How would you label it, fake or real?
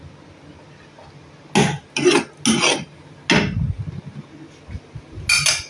real